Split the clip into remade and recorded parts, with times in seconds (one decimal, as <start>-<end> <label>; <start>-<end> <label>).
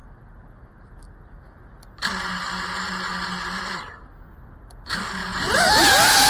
0.0-6.3 recorded